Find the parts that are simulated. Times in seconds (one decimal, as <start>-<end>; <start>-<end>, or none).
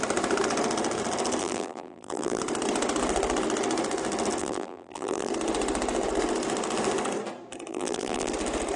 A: 1.4-2.4; 4.4-5.3; 7.7-8.3